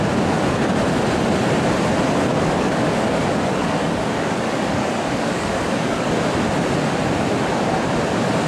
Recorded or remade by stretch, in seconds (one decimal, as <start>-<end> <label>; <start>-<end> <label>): 0.0-2.3 recorded; 2.3-6.1 remade; 6.1-8.5 recorded